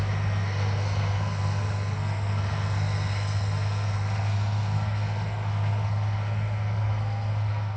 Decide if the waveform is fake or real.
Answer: fake